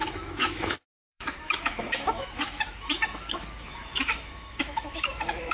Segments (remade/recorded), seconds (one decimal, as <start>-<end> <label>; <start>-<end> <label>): 0.0-5.5 remade